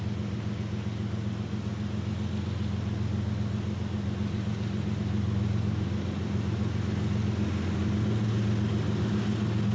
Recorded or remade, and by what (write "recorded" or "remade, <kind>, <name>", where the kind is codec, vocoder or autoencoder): recorded